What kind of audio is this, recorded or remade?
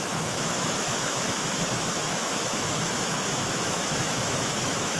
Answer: remade